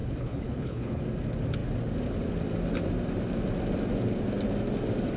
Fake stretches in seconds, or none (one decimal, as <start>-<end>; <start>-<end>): 0.0-1.0